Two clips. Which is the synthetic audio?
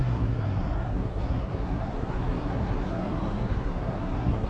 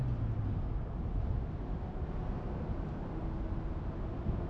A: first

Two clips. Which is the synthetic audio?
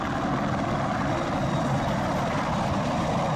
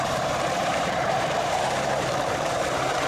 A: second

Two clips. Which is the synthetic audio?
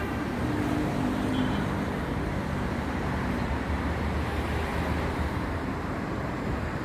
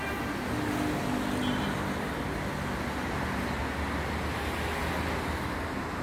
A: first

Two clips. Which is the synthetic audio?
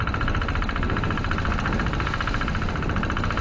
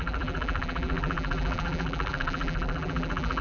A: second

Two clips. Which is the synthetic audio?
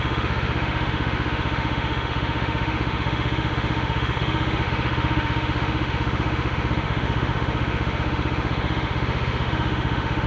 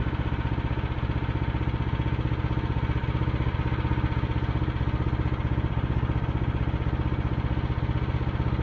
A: first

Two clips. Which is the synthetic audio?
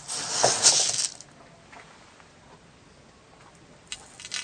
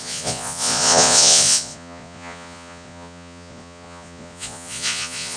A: second